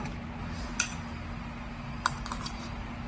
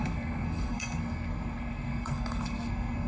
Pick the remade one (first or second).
second